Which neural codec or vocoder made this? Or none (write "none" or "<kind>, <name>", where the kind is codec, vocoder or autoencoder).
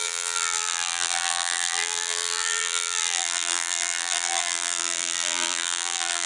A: vocoder, BigVGAN v2